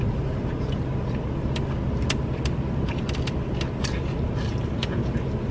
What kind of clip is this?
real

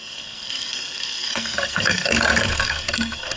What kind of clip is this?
fake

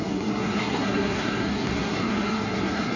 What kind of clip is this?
fake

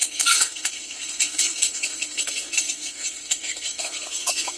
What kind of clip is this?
fake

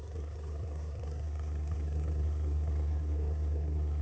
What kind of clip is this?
fake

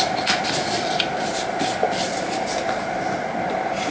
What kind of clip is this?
real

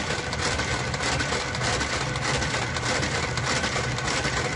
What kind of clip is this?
real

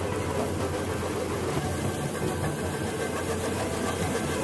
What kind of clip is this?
real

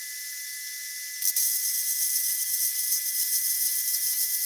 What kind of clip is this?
real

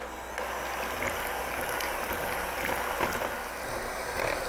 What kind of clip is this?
real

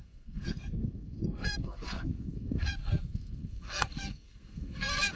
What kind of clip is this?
fake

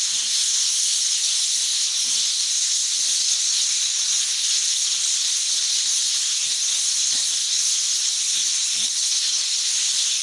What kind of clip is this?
fake